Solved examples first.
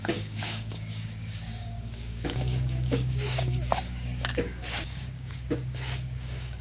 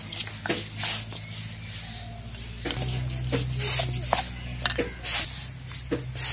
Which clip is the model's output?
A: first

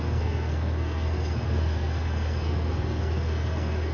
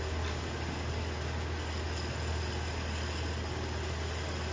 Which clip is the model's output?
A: first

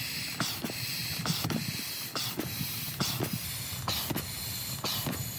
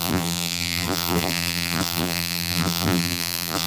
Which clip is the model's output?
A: second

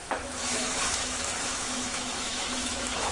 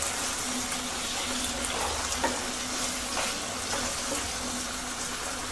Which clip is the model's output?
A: first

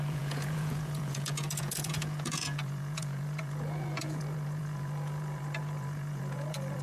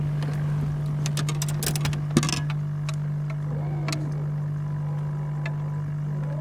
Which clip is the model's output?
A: first